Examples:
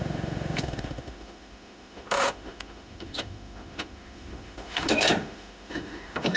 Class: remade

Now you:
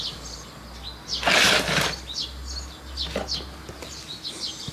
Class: recorded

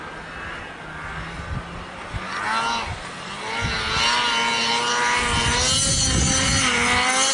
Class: recorded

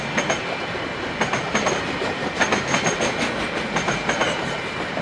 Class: recorded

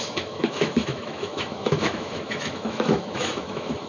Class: remade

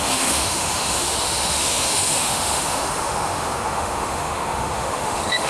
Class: remade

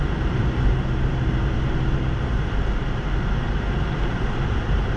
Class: recorded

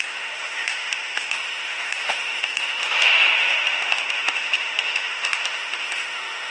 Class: remade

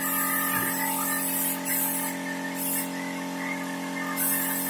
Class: recorded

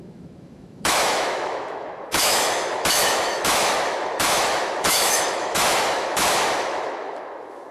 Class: remade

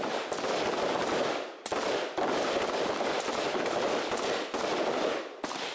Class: recorded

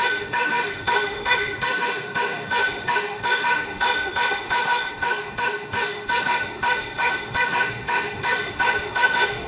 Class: remade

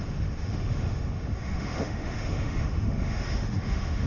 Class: remade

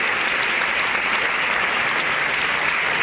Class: recorded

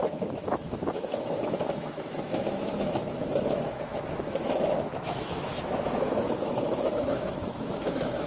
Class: remade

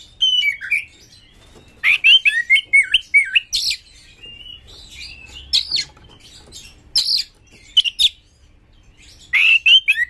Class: recorded